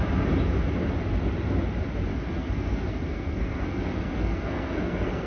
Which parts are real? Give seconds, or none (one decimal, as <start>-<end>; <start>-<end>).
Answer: 0.0-2.1